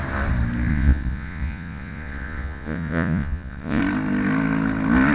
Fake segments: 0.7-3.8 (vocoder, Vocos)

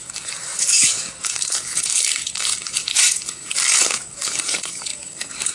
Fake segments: 0.0-5.5 (codec, DAC)

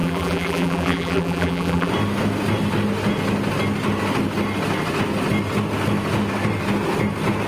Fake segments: 0.0-1.9 (vocoder, BigVGAN v2)